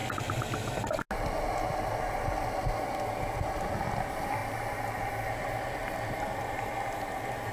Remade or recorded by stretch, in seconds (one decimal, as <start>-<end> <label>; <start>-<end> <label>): 0.0-7.5 recorded